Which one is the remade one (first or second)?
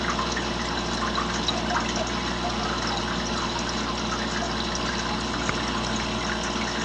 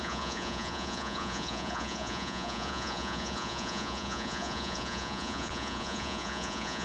second